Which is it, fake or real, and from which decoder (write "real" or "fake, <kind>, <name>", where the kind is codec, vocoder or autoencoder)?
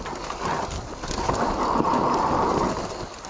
real